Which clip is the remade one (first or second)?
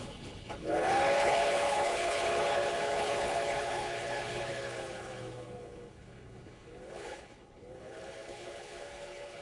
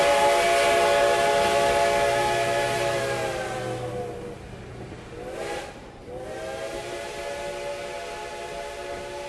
first